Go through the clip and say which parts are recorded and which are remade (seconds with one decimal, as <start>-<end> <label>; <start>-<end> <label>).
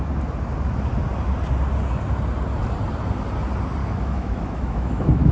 0.0-3.8 recorded; 3.8-5.3 remade